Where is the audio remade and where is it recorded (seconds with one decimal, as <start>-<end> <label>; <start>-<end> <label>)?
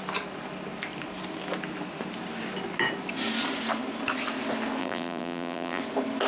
0.0-4.8 recorded; 4.8-5.8 remade; 5.8-6.3 recorded